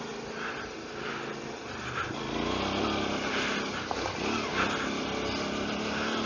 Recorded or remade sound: recorded